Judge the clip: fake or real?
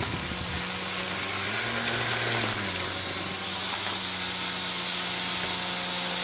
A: real